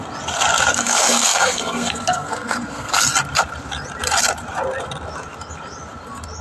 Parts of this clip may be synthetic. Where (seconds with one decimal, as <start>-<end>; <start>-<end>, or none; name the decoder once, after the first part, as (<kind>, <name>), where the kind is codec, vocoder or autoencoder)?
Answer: 0.7-3.0 (codec, SNAC)